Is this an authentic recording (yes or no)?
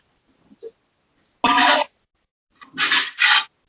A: yes